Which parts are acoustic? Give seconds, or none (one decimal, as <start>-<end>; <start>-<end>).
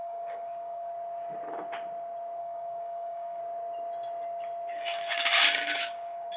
0.9-2.4; 3.4-4.7